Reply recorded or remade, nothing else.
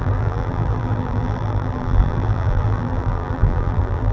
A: remade